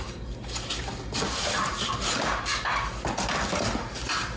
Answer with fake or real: real